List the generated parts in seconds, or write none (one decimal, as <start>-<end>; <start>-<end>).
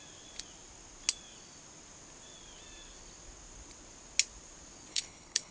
4.9-5.5